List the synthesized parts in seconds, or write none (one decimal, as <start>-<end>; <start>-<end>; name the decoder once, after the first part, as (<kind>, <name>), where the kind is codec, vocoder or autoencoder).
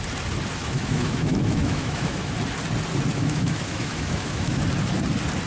0.6-2.3 (autoencoder, DAC-VAE); 3.1-4.6